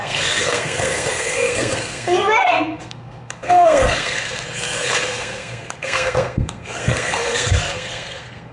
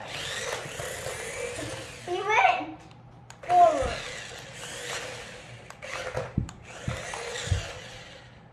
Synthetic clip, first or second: first